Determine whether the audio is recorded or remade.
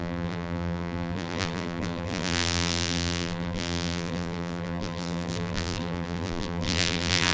remade